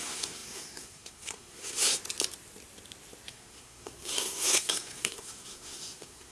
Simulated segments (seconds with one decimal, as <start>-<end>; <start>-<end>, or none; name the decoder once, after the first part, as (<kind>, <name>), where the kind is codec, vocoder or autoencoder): 0.0-2.0 (codec, SNAC); 3.3-6.3